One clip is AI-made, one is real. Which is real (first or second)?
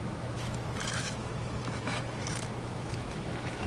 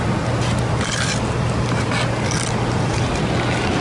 second